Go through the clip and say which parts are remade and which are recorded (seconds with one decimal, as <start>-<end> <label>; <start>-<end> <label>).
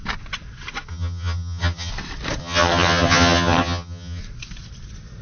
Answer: 0.0-0.9 recorded; 0.9-1.9 remade; 1.9-2.4 recorded; 2.4-4.2 remade; 4.2-5.2 recorded